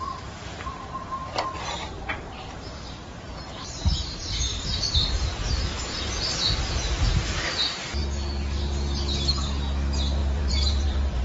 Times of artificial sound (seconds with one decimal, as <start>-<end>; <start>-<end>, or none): 4.5-5.5; 10.2-11.2